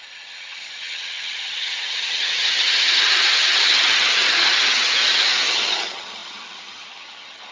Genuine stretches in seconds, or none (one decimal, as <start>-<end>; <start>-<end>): none